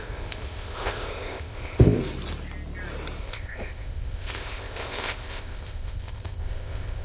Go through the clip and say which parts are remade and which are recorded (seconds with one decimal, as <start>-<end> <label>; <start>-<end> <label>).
0.0-2.0 remade; 2.0-3.2 recorded; 3.2-7.0 remade